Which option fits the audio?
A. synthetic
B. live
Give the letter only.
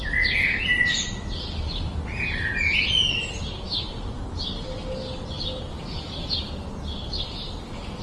B